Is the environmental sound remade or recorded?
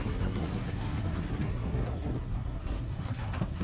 remade